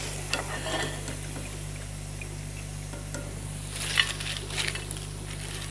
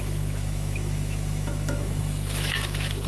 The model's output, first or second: second